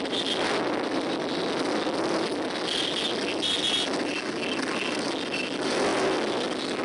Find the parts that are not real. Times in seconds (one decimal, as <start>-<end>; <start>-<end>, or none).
none